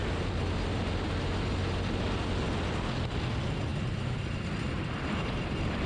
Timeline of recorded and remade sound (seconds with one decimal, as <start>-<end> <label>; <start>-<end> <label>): 0.0-5.9 recorded